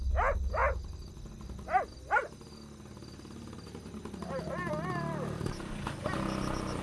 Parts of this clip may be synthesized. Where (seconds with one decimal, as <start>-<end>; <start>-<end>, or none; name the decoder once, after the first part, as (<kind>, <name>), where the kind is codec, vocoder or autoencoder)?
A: none

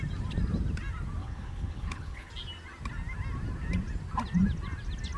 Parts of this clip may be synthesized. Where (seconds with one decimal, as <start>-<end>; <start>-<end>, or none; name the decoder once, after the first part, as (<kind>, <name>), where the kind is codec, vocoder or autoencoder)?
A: 1.2-2.3 (codec, HILCodec)

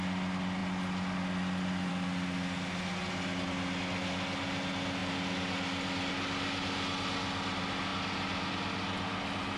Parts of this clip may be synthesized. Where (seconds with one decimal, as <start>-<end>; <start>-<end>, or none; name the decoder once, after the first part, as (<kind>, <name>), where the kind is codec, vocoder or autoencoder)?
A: none

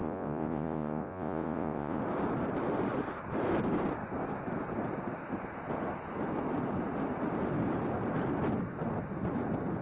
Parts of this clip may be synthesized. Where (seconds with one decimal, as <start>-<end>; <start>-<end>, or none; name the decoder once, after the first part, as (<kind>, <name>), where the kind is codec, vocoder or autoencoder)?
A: 0.0-2.0 (vocoder, Vocos)

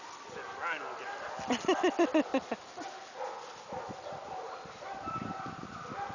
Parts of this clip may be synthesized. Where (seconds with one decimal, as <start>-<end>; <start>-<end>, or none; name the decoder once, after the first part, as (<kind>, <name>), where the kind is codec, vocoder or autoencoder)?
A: none

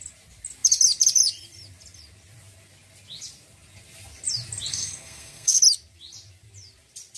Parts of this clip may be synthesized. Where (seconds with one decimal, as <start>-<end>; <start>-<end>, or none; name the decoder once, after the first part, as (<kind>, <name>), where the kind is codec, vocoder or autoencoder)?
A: 4.7-5.6 (codec, SNAC)

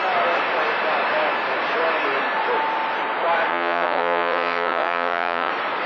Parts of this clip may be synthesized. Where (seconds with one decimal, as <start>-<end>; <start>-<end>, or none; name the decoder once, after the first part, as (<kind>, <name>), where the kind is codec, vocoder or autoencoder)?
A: 3.5-5.5 (vocoder, WaveNeXt)

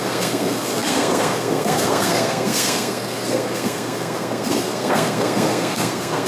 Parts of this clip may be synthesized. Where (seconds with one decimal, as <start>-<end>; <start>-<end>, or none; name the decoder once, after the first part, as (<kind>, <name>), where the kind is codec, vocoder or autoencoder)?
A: 0.0-6.3 (codec, SNAC)